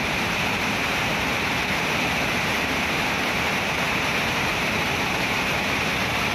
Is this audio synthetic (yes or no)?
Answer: yes